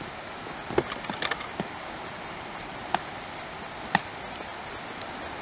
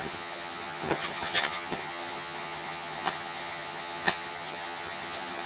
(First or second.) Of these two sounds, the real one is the first